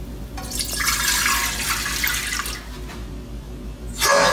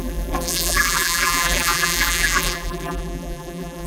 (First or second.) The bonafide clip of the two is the first